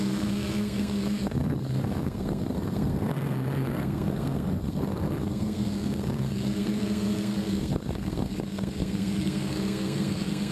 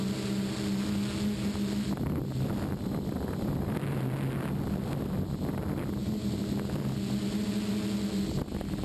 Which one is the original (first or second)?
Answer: second